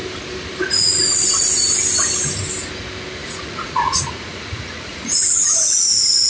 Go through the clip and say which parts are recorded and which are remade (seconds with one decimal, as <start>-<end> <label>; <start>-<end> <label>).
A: 0.0-3.2 recorded; 3.2-5.6 remade; 5.6-6.3 recorded